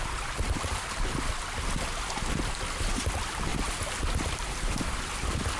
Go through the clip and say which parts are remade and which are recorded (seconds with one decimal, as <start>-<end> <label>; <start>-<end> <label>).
0.0-5.6 recorded